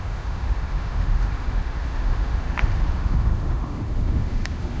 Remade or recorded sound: remade